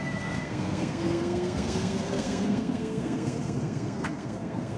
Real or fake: fake